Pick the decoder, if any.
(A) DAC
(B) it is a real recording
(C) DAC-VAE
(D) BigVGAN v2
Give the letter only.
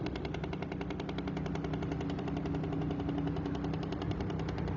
B